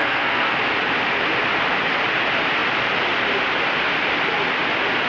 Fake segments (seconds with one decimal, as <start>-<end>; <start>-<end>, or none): 0.0-0.6

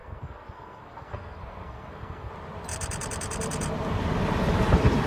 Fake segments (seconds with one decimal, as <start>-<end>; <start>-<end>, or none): 0.0-2.3

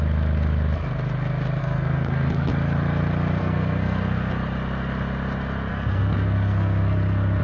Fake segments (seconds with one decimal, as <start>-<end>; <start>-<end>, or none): 1.6-2.5; 3.4-4.3; 5.7-7.4

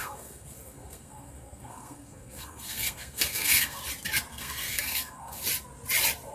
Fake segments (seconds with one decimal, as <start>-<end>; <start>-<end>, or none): 0.0-3.8; 4.3-5.4

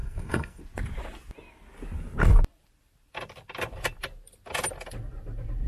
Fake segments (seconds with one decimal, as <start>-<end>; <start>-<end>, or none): 0.0-0.6

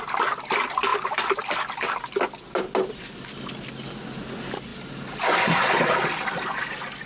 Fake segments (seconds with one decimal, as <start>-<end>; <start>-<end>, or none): none

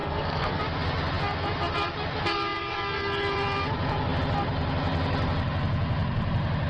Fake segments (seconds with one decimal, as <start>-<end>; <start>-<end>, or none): 0.0-0.6